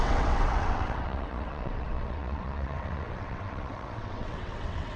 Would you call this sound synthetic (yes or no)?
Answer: yes